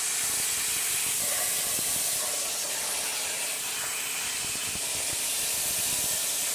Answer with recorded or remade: recorded